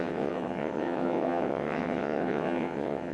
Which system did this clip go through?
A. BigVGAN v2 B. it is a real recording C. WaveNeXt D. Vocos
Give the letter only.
C